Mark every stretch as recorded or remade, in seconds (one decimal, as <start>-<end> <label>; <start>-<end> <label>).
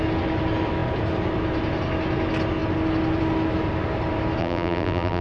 0.0-4.4 recorded; 4.4-5.2 remade